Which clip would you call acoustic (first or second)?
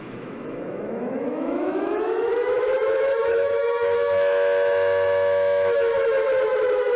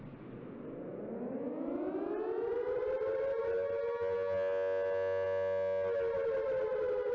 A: second